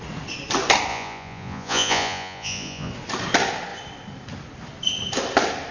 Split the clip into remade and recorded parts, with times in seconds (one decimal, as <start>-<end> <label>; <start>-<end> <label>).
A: 0.0-0.9 recorded; 0.9-2.9 remade; 2.9-5.7 recorded